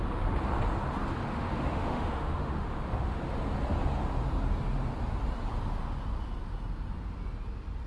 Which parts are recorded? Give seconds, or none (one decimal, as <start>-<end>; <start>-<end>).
0.0-1.3; 3.2-7.9

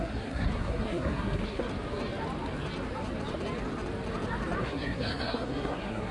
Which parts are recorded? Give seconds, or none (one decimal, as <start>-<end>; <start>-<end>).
1.7-4.6

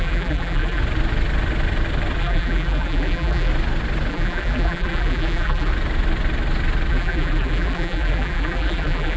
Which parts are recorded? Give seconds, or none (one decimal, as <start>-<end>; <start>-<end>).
0.8-2.2; 3.5-4.1; 5.7-6.9

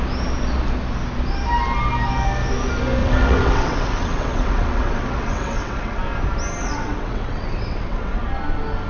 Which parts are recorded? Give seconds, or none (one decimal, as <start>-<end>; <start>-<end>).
0.0-3.0; 6.0-6.6; 8.2-8.9

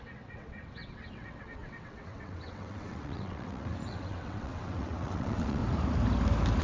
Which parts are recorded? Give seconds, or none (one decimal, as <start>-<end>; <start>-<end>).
5.6-6.6

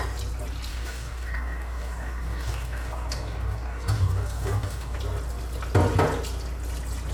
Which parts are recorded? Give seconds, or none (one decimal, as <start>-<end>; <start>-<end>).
0.0-0.7; 5.0-7.1

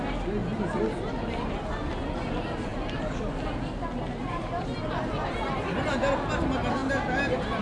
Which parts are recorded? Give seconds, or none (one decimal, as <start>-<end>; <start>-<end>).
0.0-7.6